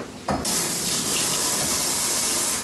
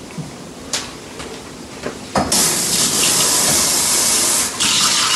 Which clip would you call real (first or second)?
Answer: first